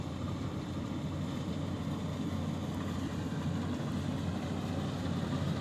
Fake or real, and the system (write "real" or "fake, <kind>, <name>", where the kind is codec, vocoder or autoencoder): real